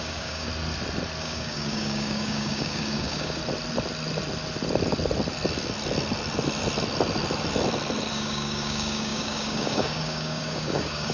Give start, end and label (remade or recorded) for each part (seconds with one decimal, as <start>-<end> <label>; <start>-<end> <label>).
0.0-0.5 remade; 0.5-1.2 recorded; 1.2-3.4 remade; 3.4-8.1 recorded; 8.1-11.1 remade